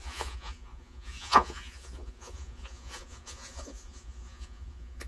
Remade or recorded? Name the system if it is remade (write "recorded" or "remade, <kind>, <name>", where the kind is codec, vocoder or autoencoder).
remade, vocoder, Vocos